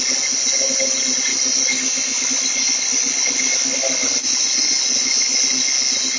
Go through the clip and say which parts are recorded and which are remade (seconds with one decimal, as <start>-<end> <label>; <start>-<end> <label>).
0.0-6.2 recorded